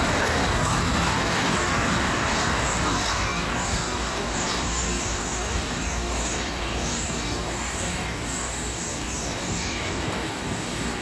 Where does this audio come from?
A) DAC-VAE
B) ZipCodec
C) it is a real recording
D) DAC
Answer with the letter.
D